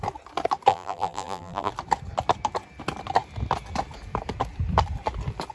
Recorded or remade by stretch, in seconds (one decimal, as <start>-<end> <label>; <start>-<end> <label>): 0.0-0.7 recorded; 0.7-1.7 remade; 1.7-5.5 recorded